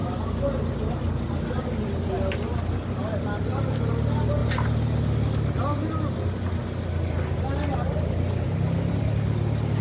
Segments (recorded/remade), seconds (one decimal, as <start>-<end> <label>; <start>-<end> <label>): 0.0-9.8 recorded